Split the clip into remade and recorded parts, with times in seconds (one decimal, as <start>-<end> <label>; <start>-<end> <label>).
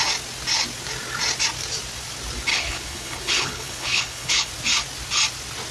0.0-2.5 recorded; 2.5-4.5 remade; 4.5-5.7 recorded